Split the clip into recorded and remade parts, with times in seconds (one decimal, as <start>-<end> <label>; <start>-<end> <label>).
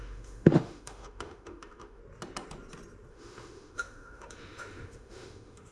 0.0-2.0 remade; 2.0-3.1 recorded; 3.1-5.7 remade